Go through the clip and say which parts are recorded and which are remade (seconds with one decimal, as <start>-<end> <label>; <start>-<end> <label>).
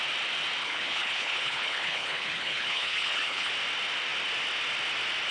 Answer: 0.0-0.6 recorded; 0.6-3.5 remade; 3.5-5.3 recorded